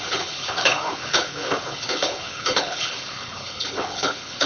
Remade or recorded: remade